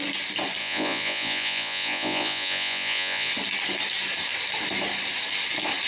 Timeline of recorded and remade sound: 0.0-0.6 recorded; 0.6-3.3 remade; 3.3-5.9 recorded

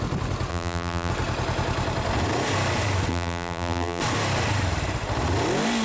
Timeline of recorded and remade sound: 0.0-0.5 recorded; 0.5-1.1 remade; 1.1-3.1 recorded; 3.1-4.0 remade; 4.0-5.8 recorded

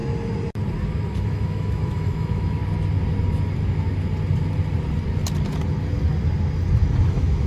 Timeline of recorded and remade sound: 0.0-1.2 recorded; 1.2-2.6 remade; 2.6-7.1 recorded; 7.1-7.5 remade

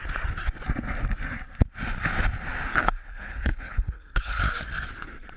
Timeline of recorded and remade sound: 0.0-2.8 recorded; 2.8-4.4 remade; 4.4-5.4 recorded

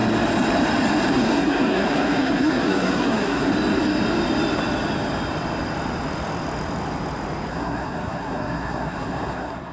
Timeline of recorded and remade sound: 0.0-1.1 recorded; 1.1-3.5 remade; 3.5-7.5 recorded; 7.5-9.7 remade

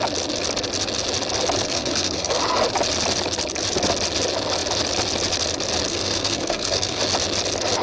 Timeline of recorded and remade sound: 0.0-1.7 recorded; 1.7-2.4 remade; 2.4-5.9 recorded; 5.9-7.0 remade; 7.0-7.8 recorded